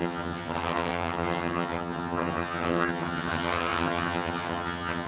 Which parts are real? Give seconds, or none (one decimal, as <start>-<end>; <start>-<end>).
none